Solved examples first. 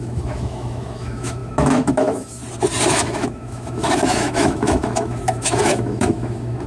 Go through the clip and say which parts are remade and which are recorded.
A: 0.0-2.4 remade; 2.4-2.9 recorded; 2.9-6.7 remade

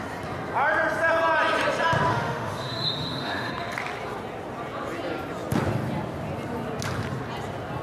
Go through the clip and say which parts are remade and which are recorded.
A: 0.0-2.1 recorded; 2.1-3.5 remade; 3.5-7.8 recorded

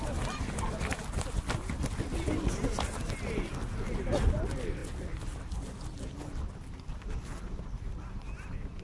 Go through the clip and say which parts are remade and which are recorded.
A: 0.0-8.8 recorded

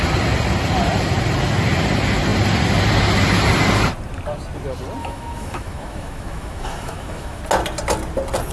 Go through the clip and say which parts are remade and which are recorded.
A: 0.0-5.0 recorded; 5.0-7.4 remade; 7.4-8.5 recorded

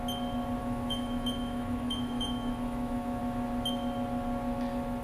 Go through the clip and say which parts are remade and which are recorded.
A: 0.0-0.6 recorded; 0.6-3.2 remade; 3.2-5.0 recorded

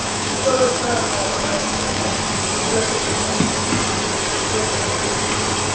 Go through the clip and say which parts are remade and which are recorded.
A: 0.0-2.0 remade; 2.0-5.7 recorded

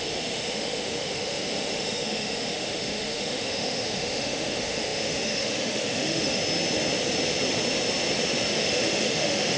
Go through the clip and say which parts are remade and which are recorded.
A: 0.0-6.4 remade; 6.4-8.5 recorded; 8.5-9.6 remade

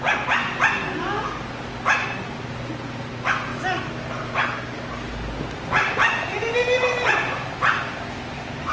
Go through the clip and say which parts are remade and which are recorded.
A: 0.0-8.7 recorded